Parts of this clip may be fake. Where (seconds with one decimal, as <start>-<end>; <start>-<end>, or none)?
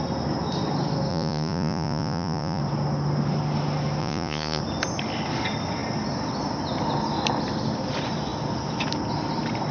1.1-2.6; 4.0-4.6